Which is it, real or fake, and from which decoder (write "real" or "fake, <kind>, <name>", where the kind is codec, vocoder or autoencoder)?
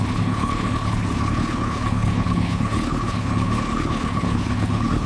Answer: fake, codec, HILCodec